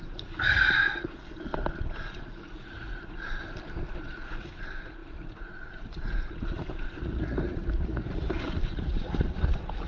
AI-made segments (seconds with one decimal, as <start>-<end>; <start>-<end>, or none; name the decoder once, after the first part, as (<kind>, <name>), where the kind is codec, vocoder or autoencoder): 0.0-1.5 (vocoder, Vocos); 2.1-3.4; 4.0-9.9